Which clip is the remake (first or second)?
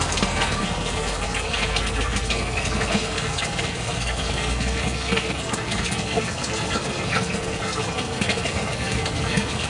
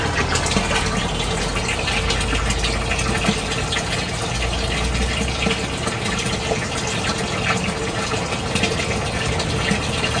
first